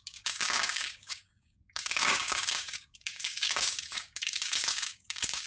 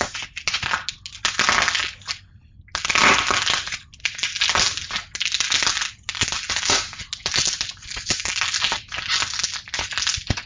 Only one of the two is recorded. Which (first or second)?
second